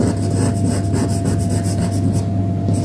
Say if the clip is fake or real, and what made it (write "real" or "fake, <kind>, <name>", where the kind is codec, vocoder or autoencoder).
real